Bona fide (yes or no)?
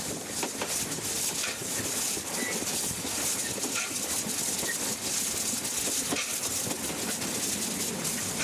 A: yes